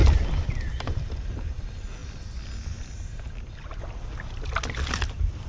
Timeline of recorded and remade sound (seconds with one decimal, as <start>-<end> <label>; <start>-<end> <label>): 0.0-5.5 recorded